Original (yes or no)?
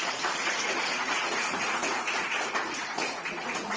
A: no